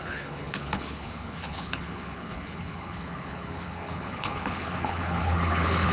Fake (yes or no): yes